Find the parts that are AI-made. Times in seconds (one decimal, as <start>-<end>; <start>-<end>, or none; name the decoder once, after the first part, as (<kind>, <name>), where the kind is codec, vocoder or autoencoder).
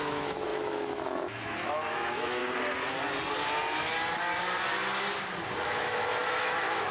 0.0-2.4 (autoencoder, DAC-VAE); 5.6-6.9